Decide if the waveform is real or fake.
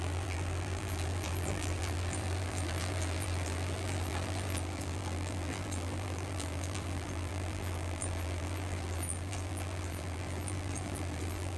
fake